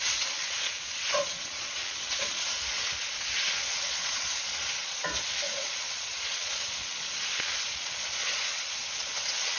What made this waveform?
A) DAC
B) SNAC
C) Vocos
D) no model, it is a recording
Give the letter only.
C